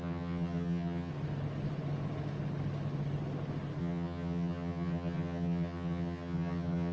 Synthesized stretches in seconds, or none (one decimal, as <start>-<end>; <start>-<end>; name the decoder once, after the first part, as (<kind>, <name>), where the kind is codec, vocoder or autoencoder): 0.0-1.1 (vocoder, HiFi-GAN); 3.8-6.9